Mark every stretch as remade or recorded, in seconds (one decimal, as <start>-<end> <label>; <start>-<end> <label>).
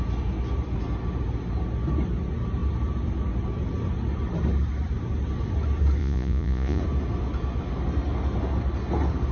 0.0-6.0 recorded; 6.0-6.8 remade; 6.8-9.3 recorded